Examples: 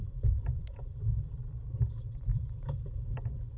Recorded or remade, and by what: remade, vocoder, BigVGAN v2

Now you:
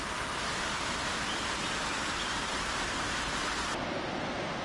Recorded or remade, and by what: recorded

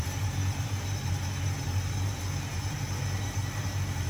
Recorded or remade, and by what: remade, vocoder, BigVGAN v2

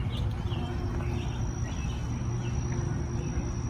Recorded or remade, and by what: recorded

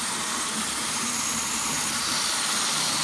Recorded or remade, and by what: remade, vocoder, BigVGAN v2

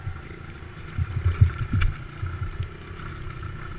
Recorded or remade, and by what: remade, vocoder, BigVGAN v2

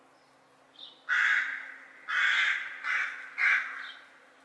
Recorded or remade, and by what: recorded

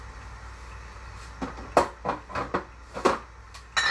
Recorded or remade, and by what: recorded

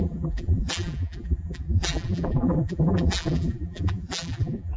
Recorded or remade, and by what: remade, vocoder, BigVGAN v2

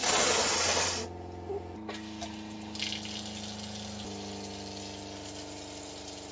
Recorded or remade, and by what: recorded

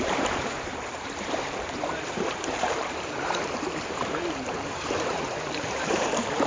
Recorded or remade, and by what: remade, vocoder, BigVGAN v2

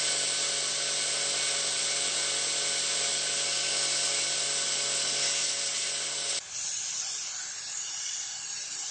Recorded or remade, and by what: recorded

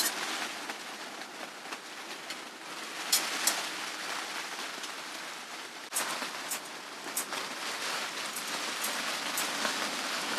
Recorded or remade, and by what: recorded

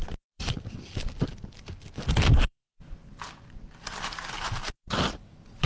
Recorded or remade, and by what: remade, vocoder, BigVGAN v2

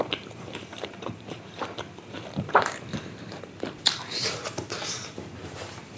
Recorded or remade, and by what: remade, vocoder, BigVGAN v2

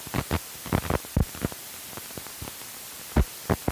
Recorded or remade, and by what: remade, vocoder, BigVGAN v2